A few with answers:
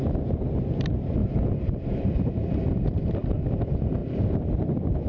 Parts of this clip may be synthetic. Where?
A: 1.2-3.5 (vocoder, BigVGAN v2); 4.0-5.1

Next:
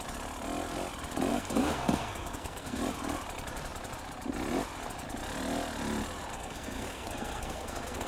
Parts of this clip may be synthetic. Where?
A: 1.3-2.8 (codec, SNAC); 6.3-8.1

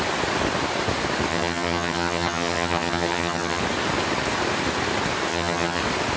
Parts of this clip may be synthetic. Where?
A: 1.3-3.6 (vocoder, HiFi-GAN); 5.3-5.8

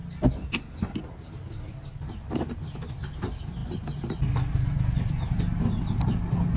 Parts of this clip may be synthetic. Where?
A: none